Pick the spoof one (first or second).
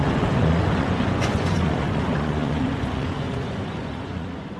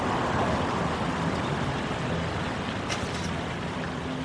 first